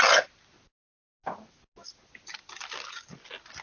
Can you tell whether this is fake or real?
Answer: real